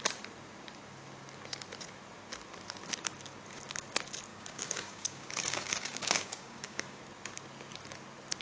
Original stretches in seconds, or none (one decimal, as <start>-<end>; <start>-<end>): 0.0-4.3; 7.0-8.4

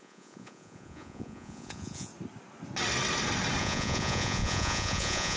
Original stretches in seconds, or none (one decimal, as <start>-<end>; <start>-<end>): 2.1-3.6

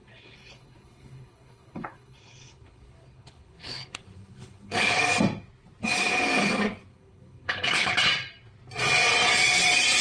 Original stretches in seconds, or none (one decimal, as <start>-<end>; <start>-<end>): 5.0-6.9; 8.1-10.0

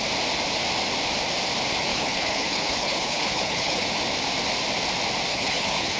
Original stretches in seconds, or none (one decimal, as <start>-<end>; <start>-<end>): 0.0-1.9; 4.0-5.3

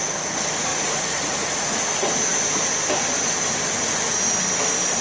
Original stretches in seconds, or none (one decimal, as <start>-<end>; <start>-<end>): 0.0-0.7; 1.8-5.0

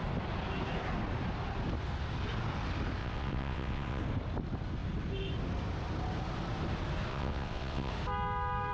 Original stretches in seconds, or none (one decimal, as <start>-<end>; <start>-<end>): 0.0-3.0; 4.0-7.1; 7.9-8.7

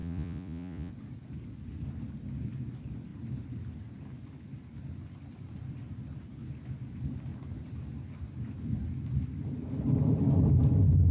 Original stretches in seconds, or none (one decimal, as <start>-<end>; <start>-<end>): 0.9-11.1